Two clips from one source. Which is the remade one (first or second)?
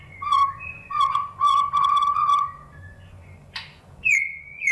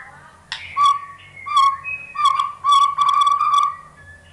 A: first